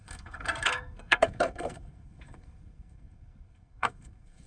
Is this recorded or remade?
remade